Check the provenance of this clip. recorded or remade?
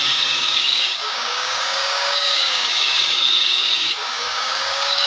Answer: remade